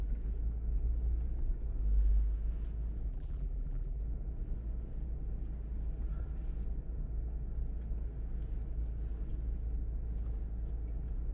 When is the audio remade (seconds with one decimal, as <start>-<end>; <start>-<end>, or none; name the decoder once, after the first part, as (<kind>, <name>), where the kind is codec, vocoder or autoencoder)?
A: 3.1-4.0 (vocoder, BigVGAN v2)